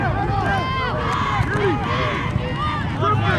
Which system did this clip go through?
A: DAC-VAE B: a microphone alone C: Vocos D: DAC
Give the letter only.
B